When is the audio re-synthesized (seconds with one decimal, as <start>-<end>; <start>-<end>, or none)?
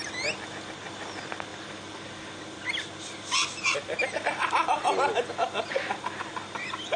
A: none